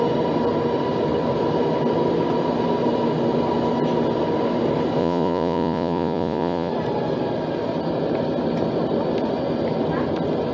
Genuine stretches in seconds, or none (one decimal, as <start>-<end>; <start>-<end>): 0.0-5.0; 6.7-10.5